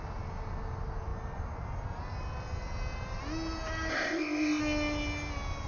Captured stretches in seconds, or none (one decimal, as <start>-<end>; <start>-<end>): 0.0-3.9; 4.6-5.7